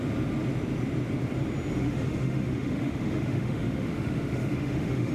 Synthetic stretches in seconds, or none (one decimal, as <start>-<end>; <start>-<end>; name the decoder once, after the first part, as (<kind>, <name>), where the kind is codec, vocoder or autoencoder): 1.8-5.1 (autoencoder, DAC-VAE)